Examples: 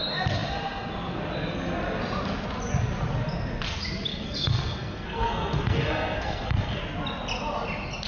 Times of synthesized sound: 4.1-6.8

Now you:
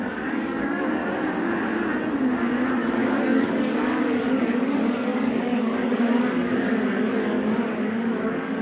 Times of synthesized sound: 0.0-1.0; 2.7-8.6

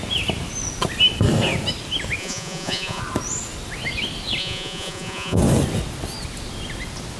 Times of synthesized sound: 2.2-3.0; 4.4-5.4

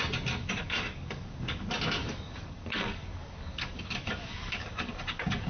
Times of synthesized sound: 0.4-1.6; 2.0-5.5